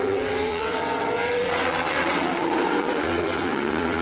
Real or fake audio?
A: fake